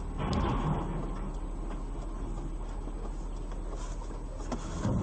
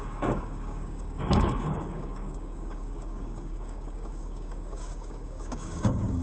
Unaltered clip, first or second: first